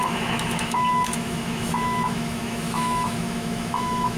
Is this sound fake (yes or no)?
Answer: yes